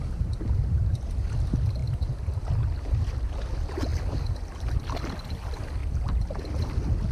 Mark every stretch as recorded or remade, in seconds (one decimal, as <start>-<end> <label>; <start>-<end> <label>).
0.0-7.1 recorded